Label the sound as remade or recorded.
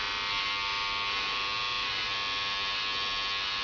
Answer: recorded